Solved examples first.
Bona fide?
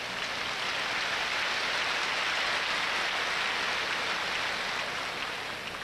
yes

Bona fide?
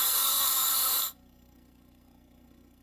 no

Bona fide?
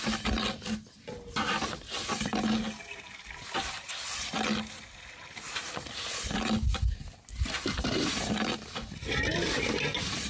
yes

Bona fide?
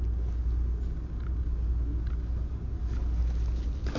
yes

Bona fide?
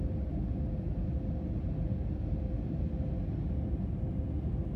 yes